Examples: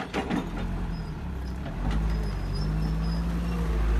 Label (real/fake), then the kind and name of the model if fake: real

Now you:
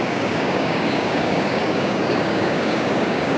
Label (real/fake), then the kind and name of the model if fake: fake, codec, DAC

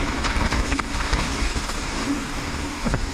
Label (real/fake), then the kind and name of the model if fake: fake, codec, DAC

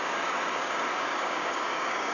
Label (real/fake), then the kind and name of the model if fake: fake, codec, DAC